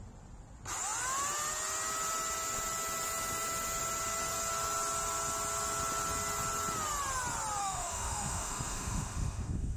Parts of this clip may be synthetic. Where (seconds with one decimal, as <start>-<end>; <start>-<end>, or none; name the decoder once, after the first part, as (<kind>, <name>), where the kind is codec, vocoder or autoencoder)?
7.6-9.8 (autoencoder, DAC-VAE)